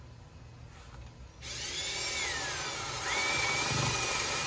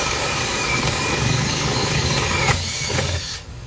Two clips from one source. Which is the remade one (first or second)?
second